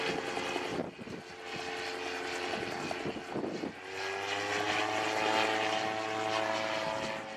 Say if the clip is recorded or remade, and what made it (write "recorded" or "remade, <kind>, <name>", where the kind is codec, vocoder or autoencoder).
recorded